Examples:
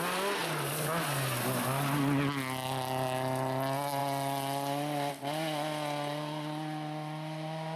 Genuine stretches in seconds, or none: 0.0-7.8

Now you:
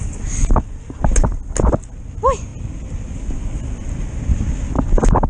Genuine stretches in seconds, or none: 0.0-5.3

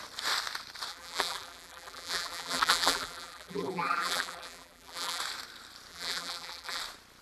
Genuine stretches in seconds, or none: 0.0-0.9; 5.2-5.9; 6.8-7.2

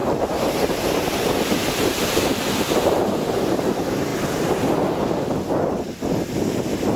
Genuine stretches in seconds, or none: 0.8-7.0

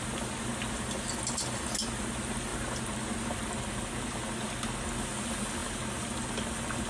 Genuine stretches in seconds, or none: 0.0-6.9

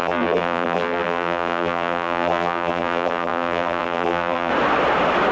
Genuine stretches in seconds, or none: 4.5-5.3